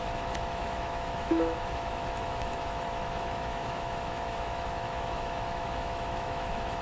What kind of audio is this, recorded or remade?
remade